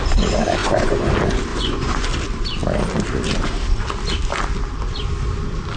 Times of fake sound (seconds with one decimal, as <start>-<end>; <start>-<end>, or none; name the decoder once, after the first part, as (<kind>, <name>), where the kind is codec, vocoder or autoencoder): 0.6-1.1 (vocoder, Vocos); 1.5-2.1